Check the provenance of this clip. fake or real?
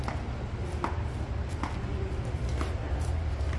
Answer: real